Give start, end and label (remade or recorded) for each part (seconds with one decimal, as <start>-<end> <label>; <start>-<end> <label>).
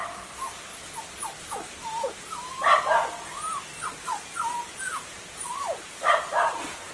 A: 0.0-0.7 remade; 0.7-4.8 recorded; 4.8-6.9 remade